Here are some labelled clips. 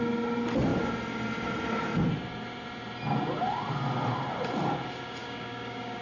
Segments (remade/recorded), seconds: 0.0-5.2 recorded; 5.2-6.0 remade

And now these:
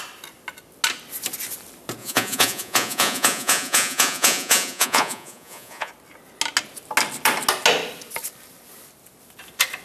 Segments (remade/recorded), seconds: 0.0-2.0 recorded; 2.0-5.9 remade; 5.9-9.8 recorded

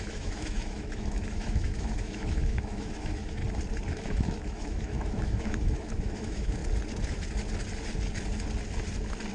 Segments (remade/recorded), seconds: 0.0-3.4 remade; 3.4-3.9 recorded; 3.9-6.6 remade; 6.6-9.3 recorded